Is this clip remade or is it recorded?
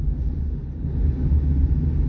recorded